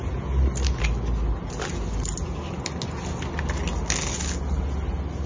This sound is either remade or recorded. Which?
recorded